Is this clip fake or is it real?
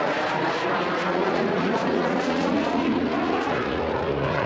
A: fake